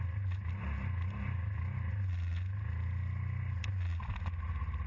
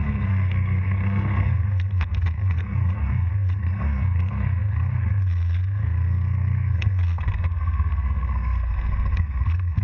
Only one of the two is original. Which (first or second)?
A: first